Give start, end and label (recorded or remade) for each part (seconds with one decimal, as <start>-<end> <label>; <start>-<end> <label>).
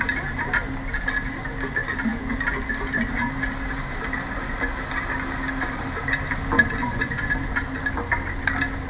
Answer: 0.0-6.8 recorded; 6.8-7.3 remade; 7.3-8.9 recorded